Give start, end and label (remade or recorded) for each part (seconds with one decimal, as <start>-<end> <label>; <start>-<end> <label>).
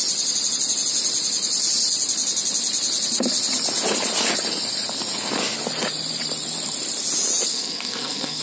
0.0-7.5 recorded; 7.5-8.4 remade